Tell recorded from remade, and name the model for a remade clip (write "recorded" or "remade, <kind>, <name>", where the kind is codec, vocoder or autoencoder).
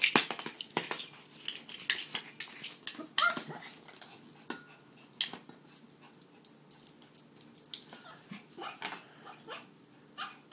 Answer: recorded